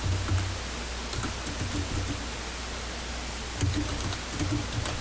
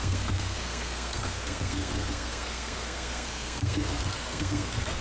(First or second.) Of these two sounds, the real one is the first